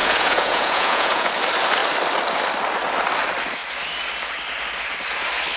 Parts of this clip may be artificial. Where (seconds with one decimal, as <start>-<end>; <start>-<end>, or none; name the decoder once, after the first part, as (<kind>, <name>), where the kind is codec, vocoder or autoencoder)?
0.0-1.3 (vocoder, Vocos)